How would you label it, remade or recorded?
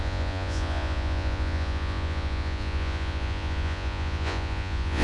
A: remade